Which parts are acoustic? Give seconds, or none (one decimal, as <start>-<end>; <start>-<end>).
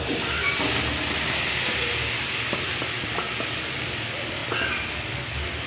0.0-5.7